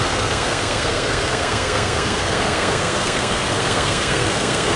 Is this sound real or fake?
fake